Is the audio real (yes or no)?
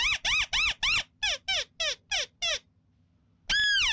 yes